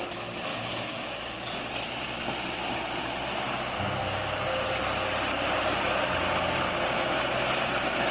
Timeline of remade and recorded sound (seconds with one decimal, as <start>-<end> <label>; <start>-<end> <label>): 0.0-0.5 recorded; 0.5-1.7 remade; 1.7-4.0 recorded; 4.0-4.8 remade; 4.8-8.1 recorded